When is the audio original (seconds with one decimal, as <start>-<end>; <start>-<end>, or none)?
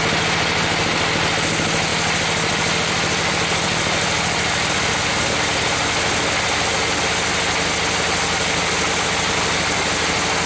0.0-10.5